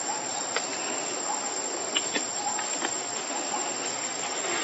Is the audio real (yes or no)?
yes